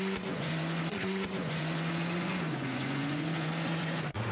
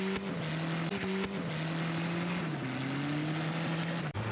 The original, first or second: second